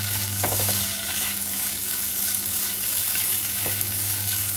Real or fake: fake